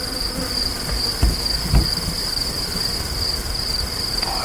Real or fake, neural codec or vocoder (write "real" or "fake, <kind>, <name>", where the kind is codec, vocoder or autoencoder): real